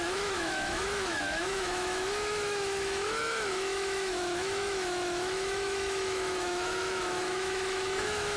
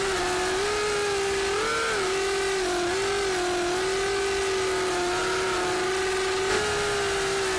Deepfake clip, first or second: first